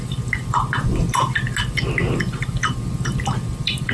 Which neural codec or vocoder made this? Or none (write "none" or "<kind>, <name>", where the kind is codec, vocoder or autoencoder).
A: none